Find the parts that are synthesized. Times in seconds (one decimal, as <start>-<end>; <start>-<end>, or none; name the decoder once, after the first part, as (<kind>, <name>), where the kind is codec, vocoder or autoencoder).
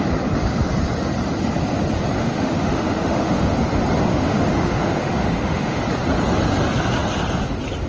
2.2-3.6 (autoencoder, DAC-VAE); 4.1-5.8